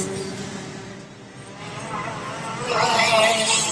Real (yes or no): yes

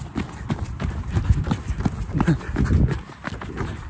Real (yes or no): yes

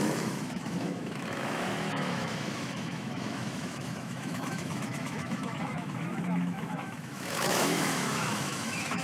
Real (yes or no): no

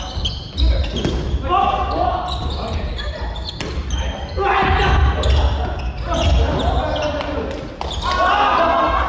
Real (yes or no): yes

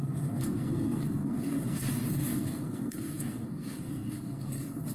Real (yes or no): no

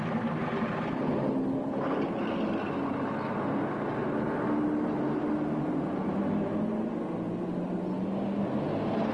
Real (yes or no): yes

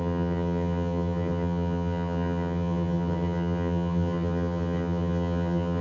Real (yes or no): no